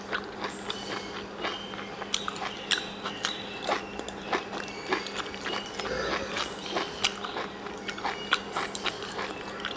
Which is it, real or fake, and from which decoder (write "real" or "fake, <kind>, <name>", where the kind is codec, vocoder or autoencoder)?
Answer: real